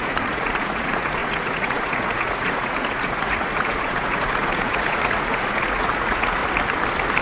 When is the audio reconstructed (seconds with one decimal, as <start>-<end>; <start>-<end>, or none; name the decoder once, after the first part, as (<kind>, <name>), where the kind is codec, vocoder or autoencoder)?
0.0-6.4 (vocoder, Vocos)